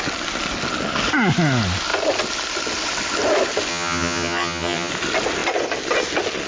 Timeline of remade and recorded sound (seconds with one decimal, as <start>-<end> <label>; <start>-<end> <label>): 0.0-3.7 recorded; 3.7-4.9 remade; 4.9-6.5 recorded